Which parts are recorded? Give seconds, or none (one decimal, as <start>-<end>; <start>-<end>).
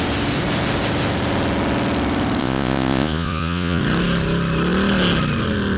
0.0-2.4; 3.8-5.8